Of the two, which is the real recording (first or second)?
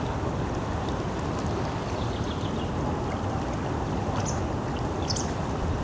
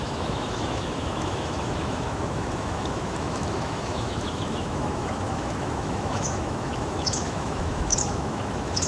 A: first